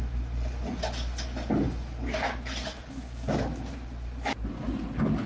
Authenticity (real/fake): real